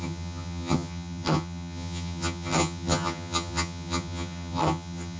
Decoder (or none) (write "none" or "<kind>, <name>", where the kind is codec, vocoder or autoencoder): vocoder, HiFi-GAN